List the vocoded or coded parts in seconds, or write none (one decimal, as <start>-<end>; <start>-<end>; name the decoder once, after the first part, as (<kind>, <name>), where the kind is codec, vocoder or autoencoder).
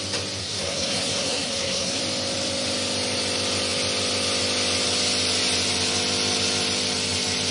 0.4-2.0 (codec, SNAC)